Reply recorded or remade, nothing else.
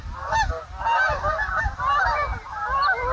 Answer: recorded